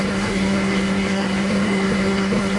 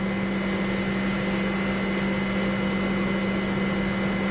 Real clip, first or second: second